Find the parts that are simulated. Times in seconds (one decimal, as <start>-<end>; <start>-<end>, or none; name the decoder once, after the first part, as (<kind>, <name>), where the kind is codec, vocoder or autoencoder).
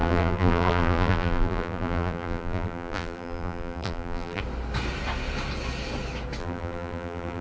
0.0-4.4 (vocoder, BigVGAN v2); 6.4-7.4